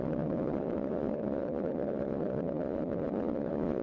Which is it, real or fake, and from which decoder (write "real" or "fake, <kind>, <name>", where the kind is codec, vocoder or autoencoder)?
fake, vocoder, Vocos